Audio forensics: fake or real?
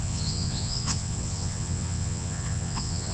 fake